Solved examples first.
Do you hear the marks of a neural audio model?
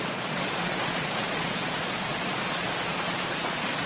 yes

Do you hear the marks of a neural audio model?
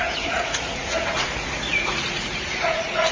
yes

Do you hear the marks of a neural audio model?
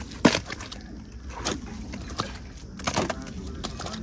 no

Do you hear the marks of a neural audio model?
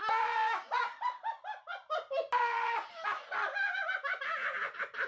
no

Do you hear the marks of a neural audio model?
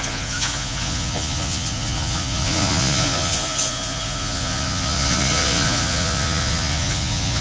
yes